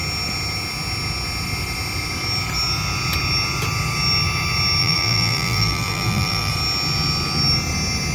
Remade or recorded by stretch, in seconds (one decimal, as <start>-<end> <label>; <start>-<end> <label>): 0.0-4.8 recorded; 4.8-6.5 remade; 6.5-8.1 recorded

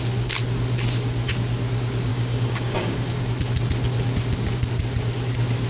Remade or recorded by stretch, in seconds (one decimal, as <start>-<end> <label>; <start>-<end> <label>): 0.0-2.1 recorded; 2.1-3.2 remade; 3.2-5.7 recorded

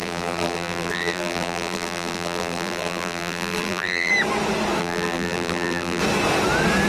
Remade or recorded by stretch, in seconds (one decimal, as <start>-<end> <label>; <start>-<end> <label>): 0.0-4.1 remade; 4.1-4.8 recorded; 4.8-6.0 remade; 6.0-6.9 recorded

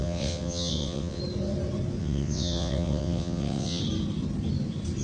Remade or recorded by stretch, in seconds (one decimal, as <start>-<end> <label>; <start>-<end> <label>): 0.0-1.2 remade; 1.2-2.0 recorded; 2.0-3.8 remade; 3.8-5.0 recorded

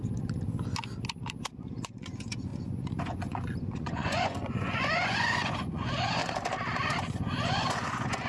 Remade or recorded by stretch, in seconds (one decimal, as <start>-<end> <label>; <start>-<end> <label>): 0.0-1.8 recorded; 1.8-2.5 remade; 2.5-3.0 recorded; 3.0-6.2 remade; 6.2-6.8 recorded; 6.8-8.3 remade

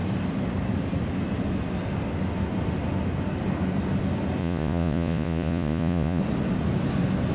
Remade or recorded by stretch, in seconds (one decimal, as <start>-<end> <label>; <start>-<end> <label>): 0.0-4.4 recorded; 4.4-6.2 remade; 6.2-7.3 recorded